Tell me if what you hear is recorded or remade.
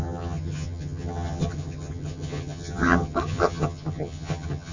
remade